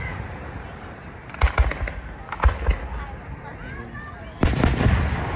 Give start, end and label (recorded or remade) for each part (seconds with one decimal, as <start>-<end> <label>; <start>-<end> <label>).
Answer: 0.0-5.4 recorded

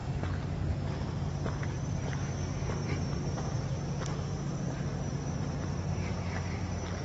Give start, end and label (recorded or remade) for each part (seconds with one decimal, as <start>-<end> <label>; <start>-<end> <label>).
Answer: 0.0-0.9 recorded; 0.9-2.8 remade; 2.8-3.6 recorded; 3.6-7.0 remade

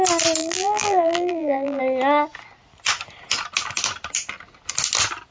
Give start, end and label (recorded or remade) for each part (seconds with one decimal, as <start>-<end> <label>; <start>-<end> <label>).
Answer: 0.0-0.4 recorded; 0.4-1.8 remade; 1.8-5.3 recorded